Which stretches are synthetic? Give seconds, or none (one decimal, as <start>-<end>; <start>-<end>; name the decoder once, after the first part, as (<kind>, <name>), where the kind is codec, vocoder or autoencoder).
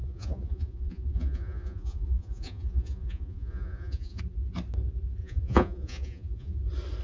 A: 0.0-4.2 (vocoder, Vocos); 5.2-6.6